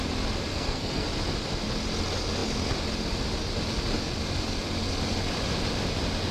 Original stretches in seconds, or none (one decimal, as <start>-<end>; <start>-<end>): 0.0-0.5; 1.1-6.3